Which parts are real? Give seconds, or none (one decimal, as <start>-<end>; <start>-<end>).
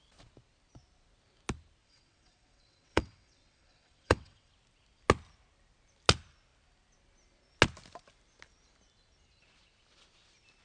0.0-1.8; 4.5-10.6